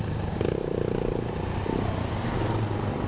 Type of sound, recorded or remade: remade